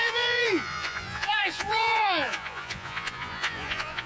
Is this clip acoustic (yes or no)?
no